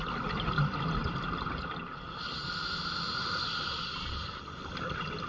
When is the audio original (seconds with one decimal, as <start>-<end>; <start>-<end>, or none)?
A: 0.0-5.3